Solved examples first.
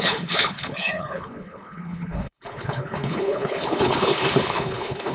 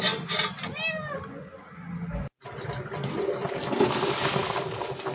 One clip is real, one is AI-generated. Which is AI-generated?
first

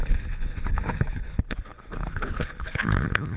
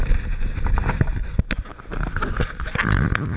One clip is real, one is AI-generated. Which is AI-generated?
first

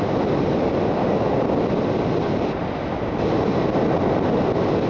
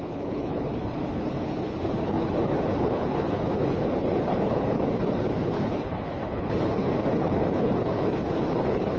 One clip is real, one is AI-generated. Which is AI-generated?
second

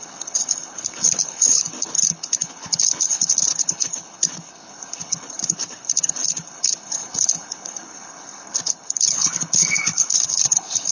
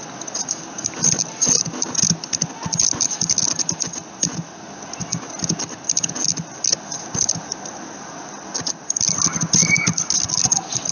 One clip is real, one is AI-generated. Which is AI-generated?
first